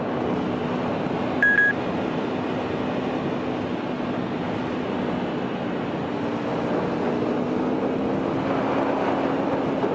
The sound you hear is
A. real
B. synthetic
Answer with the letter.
A